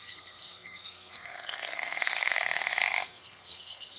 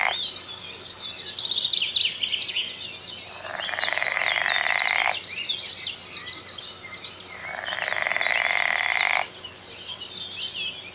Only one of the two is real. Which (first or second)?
second